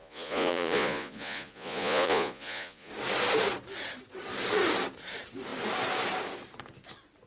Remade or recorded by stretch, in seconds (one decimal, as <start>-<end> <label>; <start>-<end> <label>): 0.0-2.9 remade; 2.9-7.3 recorded